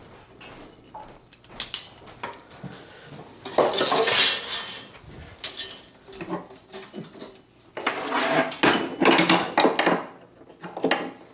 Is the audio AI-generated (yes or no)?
no